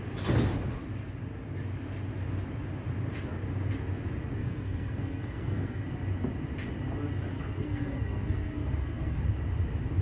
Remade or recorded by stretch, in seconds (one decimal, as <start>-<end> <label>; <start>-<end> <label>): 0.0-4.4 recorded; 4.4-5.8 remade; 5.8-7.3 recorded; 7.3-9.2 remade; 9.2-10.0 recorded